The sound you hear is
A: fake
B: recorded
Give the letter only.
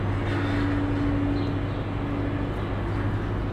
B